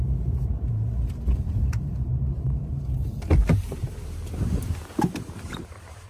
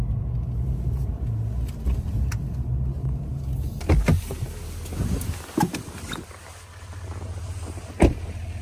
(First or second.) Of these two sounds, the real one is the second